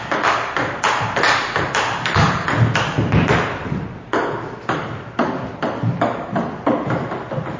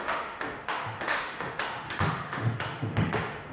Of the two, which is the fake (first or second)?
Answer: second